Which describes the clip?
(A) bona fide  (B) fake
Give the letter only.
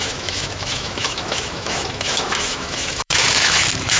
B